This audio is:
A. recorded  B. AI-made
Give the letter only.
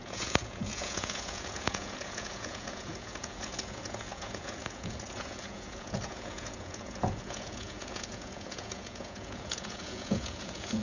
B